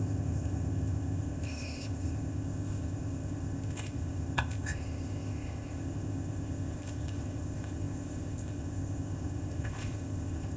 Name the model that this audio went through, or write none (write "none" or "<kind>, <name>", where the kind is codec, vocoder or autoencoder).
codec, ZipCodec